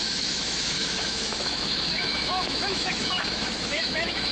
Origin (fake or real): fake